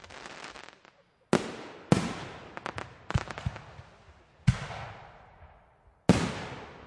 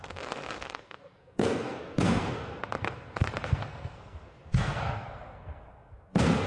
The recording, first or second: first